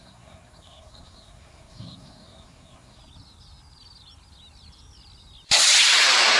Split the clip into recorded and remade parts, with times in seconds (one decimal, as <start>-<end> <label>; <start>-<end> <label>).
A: 0.0-3.0 remade; 3.0-6.4 recorded